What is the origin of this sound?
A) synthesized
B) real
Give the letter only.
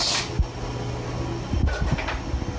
B